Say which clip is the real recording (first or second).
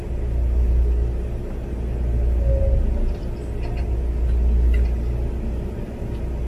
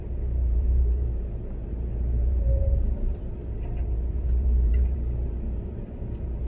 first